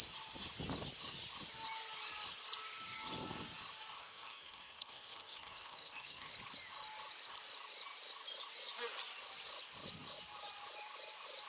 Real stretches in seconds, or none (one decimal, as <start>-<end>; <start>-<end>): 0.0-4.0; 6.3-11.5